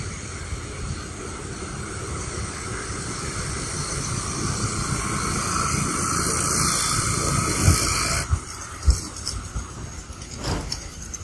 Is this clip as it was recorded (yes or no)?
yes